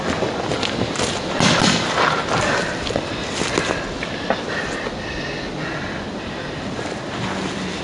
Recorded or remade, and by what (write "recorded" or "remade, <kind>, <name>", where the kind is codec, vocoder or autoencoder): recorded